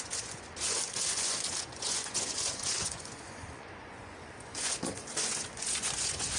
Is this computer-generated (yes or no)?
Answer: yes